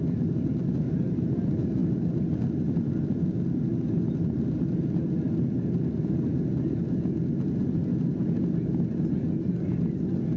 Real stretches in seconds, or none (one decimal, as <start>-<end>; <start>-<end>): 0.0-10.4